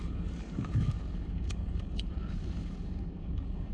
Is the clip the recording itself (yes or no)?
no